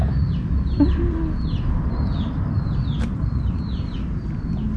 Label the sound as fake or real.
fake